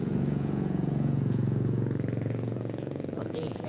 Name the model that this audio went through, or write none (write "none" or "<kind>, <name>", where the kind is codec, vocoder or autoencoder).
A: vocoder, Vocos